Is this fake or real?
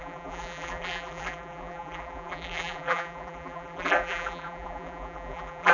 fake